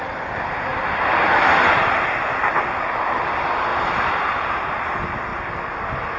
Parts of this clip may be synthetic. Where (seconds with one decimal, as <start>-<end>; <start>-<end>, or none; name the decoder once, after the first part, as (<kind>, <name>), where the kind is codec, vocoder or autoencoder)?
3.7-4.6 (vocoder, BigVGAN v2)